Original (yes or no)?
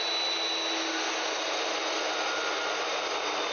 yes